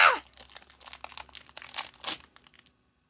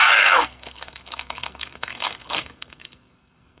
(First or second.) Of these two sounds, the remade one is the second